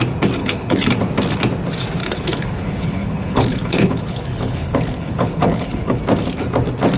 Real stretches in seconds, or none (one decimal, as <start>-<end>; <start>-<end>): 0.0-0.4; 0.9-2.0; 6.0-7.0